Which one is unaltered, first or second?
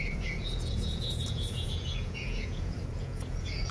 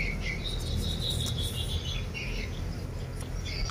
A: second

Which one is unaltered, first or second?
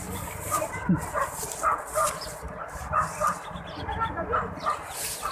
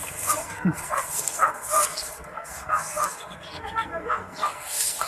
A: first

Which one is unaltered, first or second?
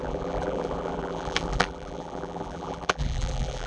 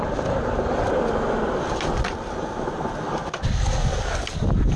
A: second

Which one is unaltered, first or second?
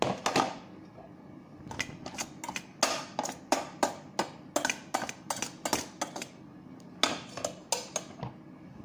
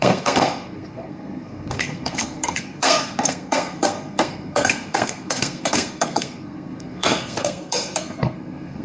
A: first